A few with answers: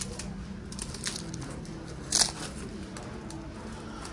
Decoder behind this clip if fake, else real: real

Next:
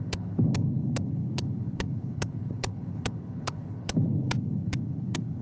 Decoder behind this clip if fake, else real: fake, codec, HILCodec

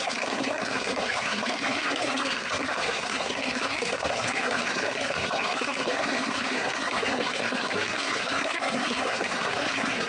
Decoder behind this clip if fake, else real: fake, codec, SNAC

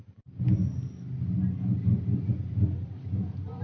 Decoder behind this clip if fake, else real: real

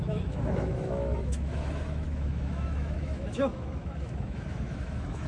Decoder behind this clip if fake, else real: fake, autoencoder, DAC-VAE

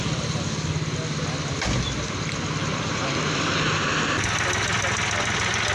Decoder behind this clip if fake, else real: real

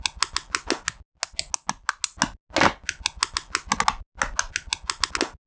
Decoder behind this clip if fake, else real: real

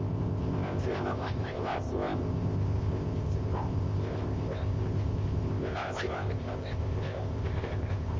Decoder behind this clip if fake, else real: fake, codec, ZipCodec